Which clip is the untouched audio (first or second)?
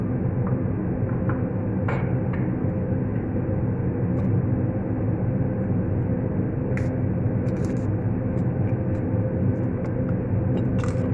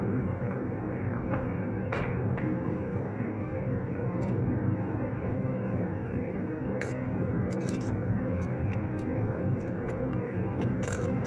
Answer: first